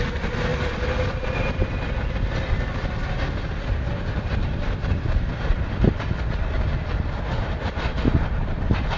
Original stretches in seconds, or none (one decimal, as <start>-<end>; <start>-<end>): 0.0-0.5; 1.7-5.3; 8.1-9.0